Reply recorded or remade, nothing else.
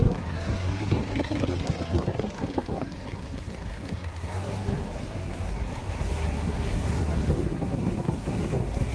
remade